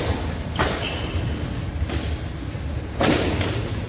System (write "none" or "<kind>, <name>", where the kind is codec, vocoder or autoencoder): none